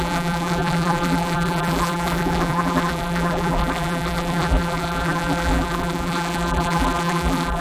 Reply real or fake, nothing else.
fake